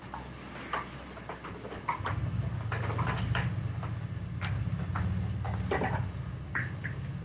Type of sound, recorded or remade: recorded